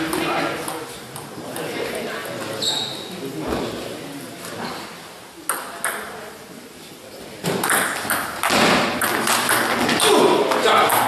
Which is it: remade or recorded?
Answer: recorded